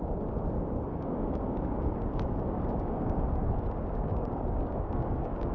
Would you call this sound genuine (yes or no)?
no